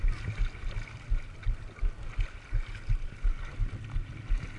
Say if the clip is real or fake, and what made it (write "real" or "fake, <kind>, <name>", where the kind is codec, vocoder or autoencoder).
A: real